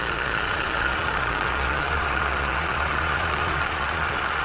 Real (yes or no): no